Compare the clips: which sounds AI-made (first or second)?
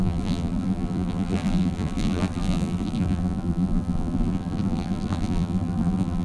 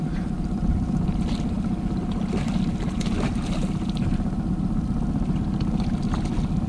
first